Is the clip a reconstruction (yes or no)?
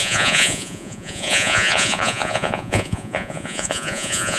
yes